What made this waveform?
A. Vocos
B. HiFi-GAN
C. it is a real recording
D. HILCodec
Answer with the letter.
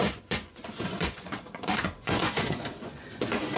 A